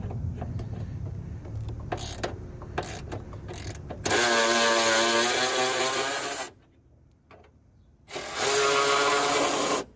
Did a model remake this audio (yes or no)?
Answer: no